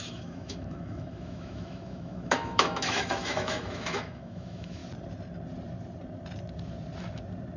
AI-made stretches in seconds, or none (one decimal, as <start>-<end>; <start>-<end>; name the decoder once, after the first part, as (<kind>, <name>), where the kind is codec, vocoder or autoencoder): 0.0-4.8 (autoencoder, DAC-VAE)

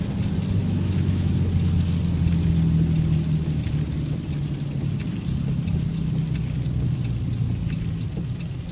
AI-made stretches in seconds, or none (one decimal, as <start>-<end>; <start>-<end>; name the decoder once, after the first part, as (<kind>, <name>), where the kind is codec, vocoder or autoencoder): 0.6-1.3 (autoencoder, DAC-VAE)